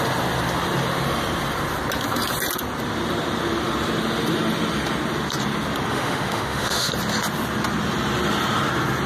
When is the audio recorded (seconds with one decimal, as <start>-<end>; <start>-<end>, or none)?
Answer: 0.0-5.9; 6.9-9.1